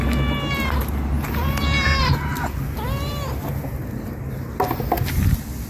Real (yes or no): yes